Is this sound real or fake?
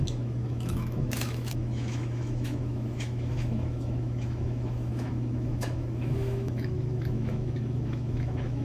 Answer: fake